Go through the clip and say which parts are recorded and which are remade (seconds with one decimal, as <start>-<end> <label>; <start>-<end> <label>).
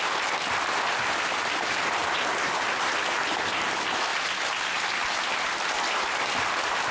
0.0-2.0 remade; 2.0-3.1 recorded; 3.1-4.1 remade; 4.1-6.0 recorded; 6.0-6.9 remade